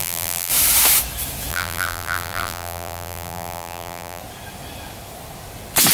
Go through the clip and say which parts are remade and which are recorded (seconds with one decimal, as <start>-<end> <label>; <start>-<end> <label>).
0.0-0.5 remade; 0.5-1.5 recorded; 1.5-4.2 remade; 4.2-5.9 recorded